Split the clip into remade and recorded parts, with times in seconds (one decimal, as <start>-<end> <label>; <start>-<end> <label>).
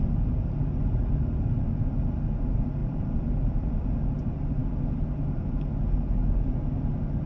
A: 0.0-2.8 recorded; 2.8-4.0 remade; 4.0-7.3 recorded